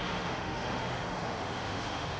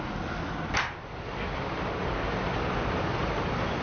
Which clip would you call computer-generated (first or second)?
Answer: first